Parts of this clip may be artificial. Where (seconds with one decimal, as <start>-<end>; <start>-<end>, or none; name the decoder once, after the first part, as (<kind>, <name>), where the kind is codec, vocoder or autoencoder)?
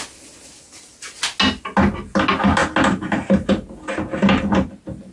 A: none